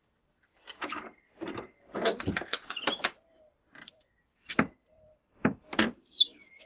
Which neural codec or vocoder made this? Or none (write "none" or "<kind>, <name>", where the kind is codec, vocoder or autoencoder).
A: vocoder, BigVGAN v2